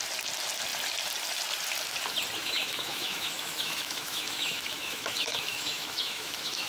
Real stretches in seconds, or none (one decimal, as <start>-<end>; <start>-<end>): 0.0-2.4